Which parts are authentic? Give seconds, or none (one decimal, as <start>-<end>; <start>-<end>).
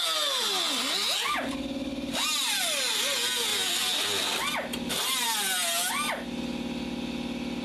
0.0-7.6